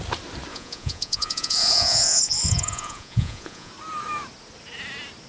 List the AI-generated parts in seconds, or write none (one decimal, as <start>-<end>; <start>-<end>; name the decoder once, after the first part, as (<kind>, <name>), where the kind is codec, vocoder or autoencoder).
0.5-3.7 (vocoder, Vocos)